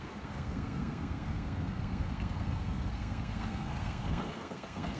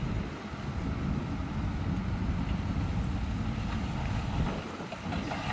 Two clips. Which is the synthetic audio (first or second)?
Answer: first